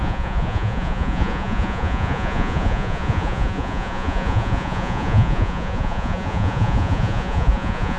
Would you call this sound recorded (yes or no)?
no